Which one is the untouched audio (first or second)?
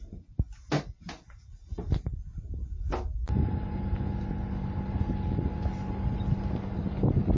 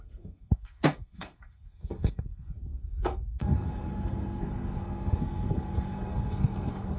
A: first